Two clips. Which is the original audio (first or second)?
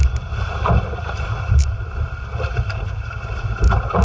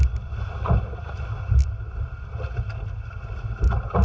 second